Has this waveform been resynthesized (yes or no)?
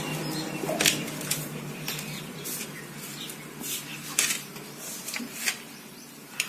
no